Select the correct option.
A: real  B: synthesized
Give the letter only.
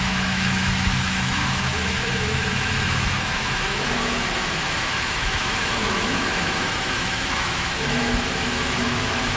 B